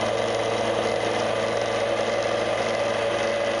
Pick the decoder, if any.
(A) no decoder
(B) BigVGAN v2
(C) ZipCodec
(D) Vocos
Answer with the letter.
A